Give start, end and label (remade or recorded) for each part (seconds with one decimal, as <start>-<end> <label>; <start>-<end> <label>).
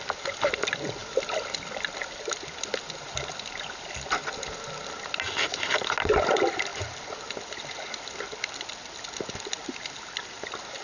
0.0-10.8 recorded